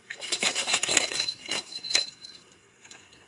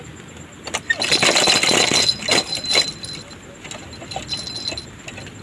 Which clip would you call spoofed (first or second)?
first